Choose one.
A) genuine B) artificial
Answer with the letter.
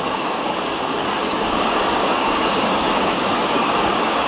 B